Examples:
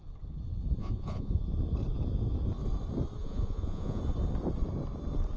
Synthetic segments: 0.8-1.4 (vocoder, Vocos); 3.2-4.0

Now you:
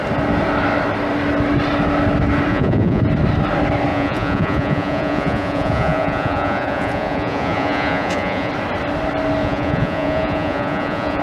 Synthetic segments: 2.5-3.0 (vocoder, Vocos); 3.9-8.5; 9.4-11.2

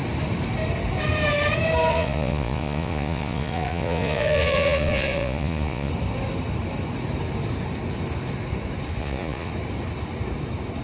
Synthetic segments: 1.9-5.9 (vocoder, Vocos); 9.0-9.5

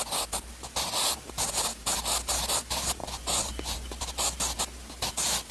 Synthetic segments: 3.0-3.9 (vocoder, Vocos)